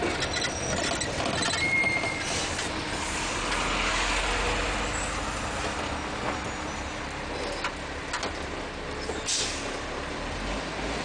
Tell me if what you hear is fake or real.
real